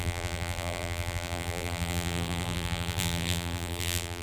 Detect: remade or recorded remade